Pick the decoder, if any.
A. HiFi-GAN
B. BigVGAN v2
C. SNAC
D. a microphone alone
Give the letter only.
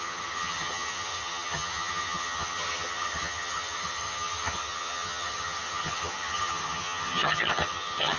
A